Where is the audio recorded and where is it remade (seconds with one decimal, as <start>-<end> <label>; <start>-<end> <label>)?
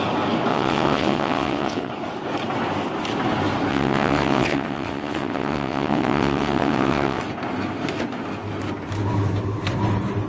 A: 0.0-0.5 recorded; 0.5-1.9 remade; 1.9-3.7 recorded; 3.7-7.2 remade; 7.2-10.3 recorded